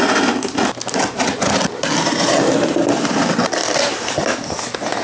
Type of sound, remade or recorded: recorded